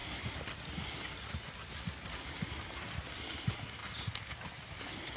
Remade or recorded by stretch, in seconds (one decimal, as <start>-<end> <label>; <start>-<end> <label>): 0.0-5.2 recorded